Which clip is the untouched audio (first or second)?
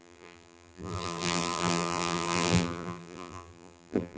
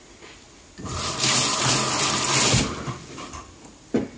second